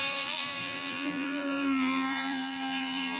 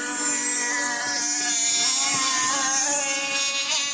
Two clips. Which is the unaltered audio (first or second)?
second